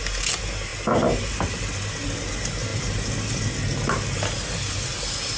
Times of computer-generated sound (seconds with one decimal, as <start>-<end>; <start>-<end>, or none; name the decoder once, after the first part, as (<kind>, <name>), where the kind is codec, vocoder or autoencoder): none